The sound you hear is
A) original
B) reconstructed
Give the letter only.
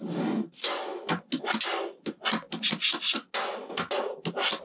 A